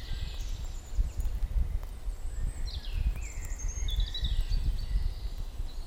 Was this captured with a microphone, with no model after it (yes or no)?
yes